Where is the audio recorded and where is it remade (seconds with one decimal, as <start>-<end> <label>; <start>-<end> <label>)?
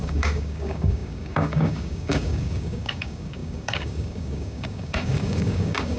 0.0-6.0 remade